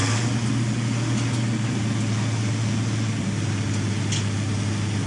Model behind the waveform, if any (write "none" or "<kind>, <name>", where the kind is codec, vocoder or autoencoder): none